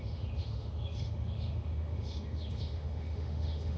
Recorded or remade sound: remade